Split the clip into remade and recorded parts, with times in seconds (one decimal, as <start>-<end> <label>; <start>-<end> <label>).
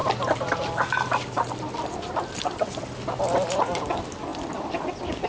0.0-3.2 remade; 3.2-4.3 recorded; 4.3-5.3 remade